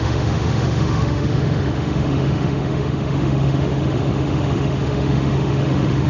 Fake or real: fake